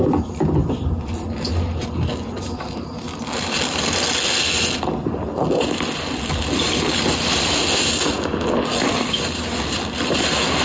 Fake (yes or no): no